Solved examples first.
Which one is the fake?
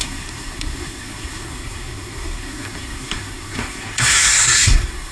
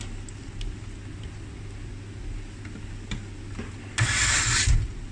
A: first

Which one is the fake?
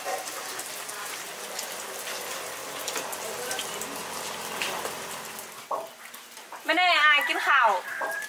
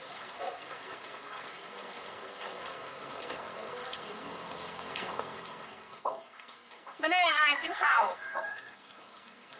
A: second